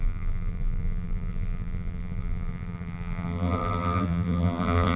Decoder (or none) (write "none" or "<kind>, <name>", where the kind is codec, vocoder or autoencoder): vocoder, BigVGAN v2